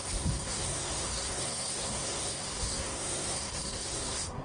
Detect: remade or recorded remade